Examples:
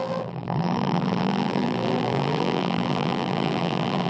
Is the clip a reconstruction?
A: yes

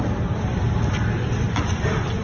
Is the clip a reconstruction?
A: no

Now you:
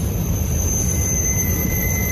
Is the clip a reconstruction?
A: no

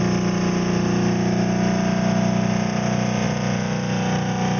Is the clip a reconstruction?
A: no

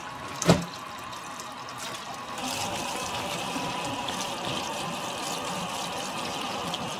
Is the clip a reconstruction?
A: no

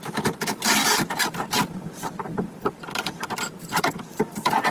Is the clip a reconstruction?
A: yes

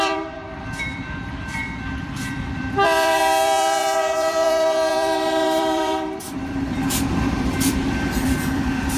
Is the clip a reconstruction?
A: yes